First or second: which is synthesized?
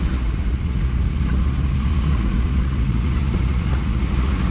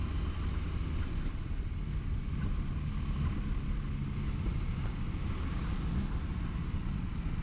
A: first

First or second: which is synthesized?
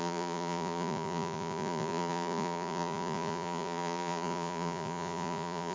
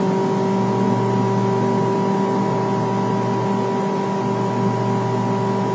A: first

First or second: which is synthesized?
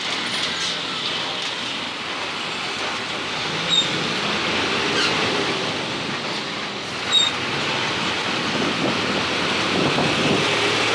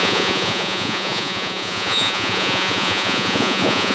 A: second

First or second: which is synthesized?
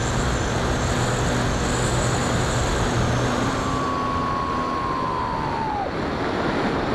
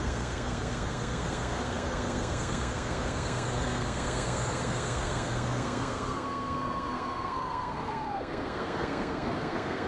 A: second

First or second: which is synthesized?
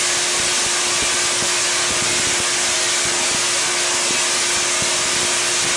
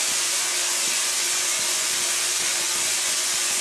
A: second